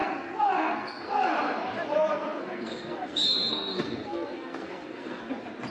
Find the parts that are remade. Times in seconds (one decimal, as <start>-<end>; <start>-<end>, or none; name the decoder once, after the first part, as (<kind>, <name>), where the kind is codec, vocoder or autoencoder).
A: 0.0-1.4 (codec, SNAC); 1.9-5.3